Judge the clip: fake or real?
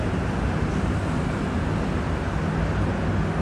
real